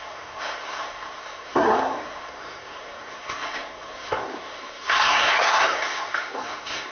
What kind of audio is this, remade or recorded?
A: remade